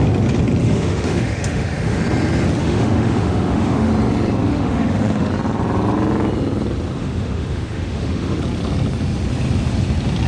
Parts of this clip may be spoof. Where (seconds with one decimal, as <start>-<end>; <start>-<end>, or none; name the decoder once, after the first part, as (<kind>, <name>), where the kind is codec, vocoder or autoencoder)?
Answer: 0.6-2.0 (autoencoder, DAC-VAE); 2.6-3.9; 4.5-5.3; 7.0-8.4